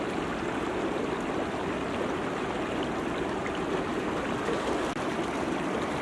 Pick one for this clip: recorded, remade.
recorded